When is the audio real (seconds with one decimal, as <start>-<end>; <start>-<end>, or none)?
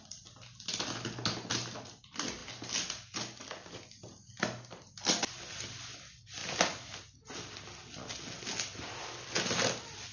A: 0.0-10.1